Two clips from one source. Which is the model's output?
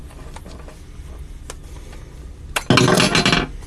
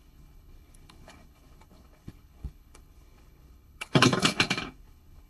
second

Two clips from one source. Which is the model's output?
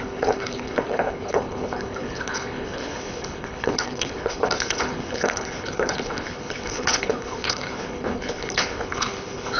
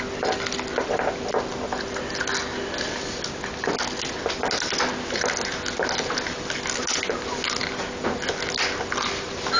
first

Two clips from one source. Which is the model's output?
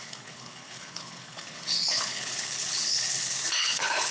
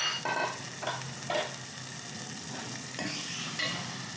first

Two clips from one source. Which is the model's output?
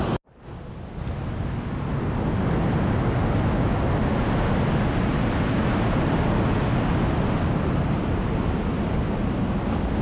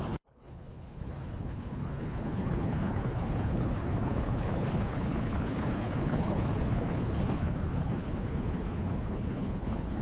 second